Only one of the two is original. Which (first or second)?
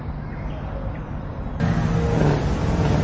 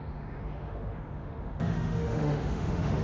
first